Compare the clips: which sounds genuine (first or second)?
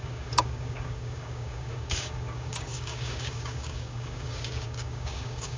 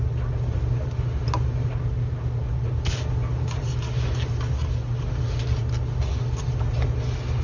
second